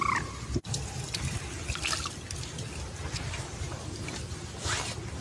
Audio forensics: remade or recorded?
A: recorded